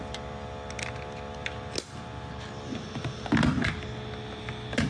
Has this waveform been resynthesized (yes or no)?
no